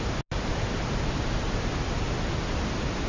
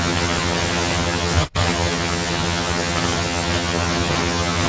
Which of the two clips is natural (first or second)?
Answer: first